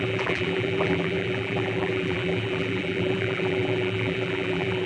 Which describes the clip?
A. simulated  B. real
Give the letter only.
A